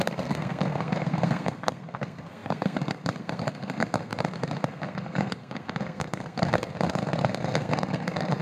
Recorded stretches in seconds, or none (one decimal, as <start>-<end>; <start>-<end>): none